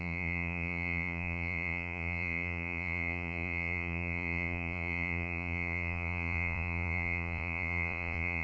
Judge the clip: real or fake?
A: fake